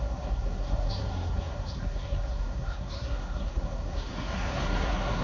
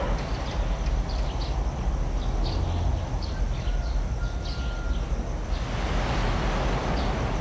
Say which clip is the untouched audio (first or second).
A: second